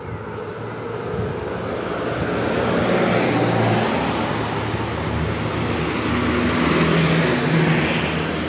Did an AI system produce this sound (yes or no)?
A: no